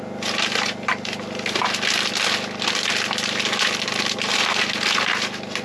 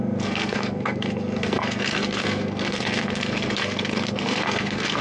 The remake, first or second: second